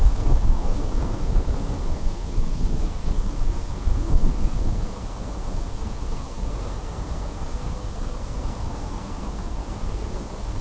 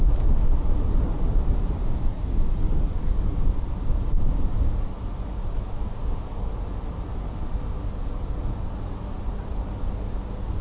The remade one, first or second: first